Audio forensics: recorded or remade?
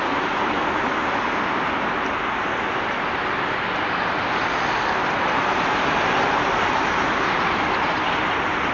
recorded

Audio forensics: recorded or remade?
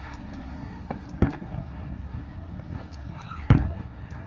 remade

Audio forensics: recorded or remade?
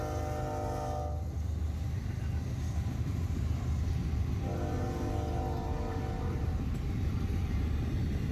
recorded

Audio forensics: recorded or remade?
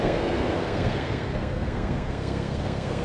remade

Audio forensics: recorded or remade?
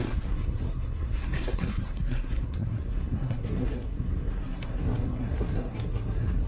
remade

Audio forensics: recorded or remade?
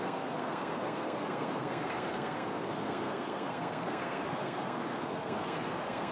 remade